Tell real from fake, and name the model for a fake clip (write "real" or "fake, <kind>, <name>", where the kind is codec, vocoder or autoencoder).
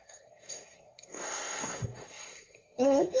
fake, codec, SNAC